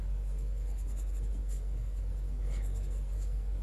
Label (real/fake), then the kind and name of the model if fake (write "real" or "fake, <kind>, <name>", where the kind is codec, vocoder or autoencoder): fake, codec, SNAC